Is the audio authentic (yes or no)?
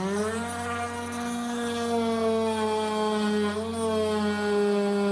yes